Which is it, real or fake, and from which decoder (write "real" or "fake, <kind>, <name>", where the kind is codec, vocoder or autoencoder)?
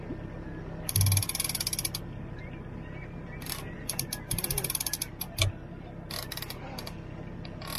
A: real